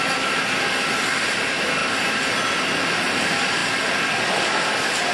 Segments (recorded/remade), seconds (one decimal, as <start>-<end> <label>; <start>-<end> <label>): 0.0-1.8 recorded; 1.8-2.4 remade; 2.4-5.1 recorded